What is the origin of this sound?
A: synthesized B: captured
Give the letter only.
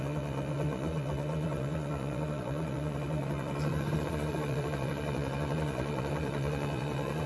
A